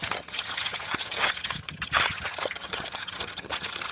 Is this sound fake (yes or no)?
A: yes